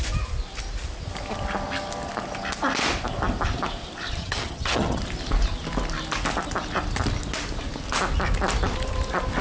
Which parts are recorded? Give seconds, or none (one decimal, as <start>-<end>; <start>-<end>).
0.0-4.2; 5.0-9.4